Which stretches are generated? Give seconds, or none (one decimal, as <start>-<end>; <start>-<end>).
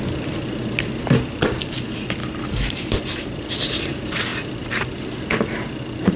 2.2-3.8